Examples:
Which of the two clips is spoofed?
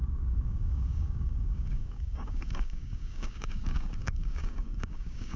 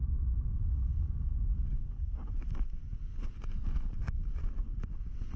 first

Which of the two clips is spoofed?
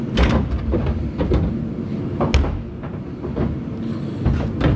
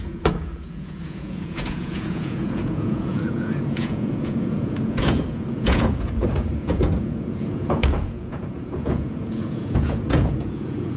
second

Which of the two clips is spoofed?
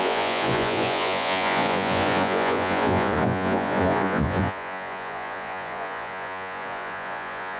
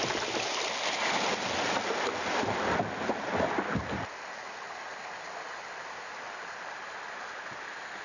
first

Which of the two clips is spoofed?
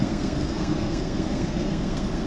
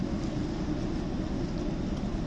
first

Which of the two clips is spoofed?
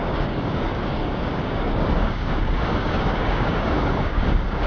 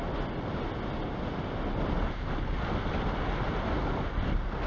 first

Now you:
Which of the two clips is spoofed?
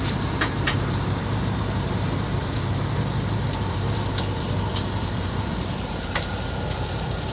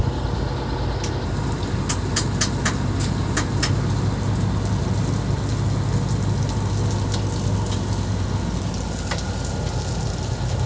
first